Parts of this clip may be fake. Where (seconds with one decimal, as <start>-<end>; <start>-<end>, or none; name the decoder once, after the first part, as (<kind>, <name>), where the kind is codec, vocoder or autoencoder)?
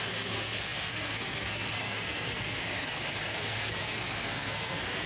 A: 0.0-5.1 (codec, SNAC)